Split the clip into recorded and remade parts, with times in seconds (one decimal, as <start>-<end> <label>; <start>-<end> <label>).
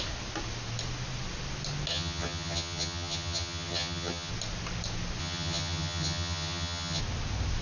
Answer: 0.0-1.9 recorded; 1.9-4.3 remade; 4.3-5.2 recorded; 5.2-7.0 remade; 7.0-7.6 recorded